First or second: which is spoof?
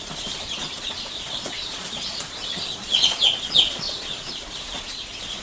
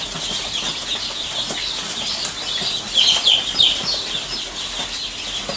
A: first